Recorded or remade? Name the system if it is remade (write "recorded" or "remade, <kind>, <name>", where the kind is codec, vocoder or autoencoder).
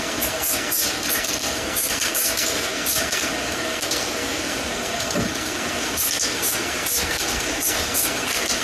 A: remade, codec, SNAC